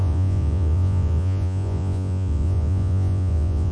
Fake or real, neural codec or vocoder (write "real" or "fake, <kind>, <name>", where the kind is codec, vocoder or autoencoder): fake, vocoder, Vocos